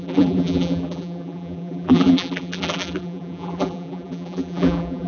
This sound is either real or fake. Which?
fake